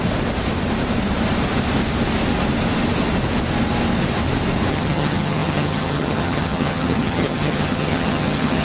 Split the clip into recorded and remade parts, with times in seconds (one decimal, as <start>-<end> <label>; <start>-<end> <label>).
0.0-4.7 recorded; 4.7-8.6 remade